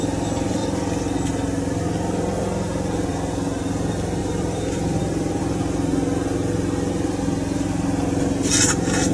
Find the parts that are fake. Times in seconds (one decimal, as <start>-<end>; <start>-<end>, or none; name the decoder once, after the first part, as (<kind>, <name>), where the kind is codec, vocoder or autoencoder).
4.2-5.0 (vocoder, BigVGAN v2)